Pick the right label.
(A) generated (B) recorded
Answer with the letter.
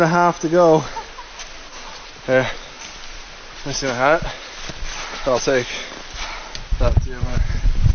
B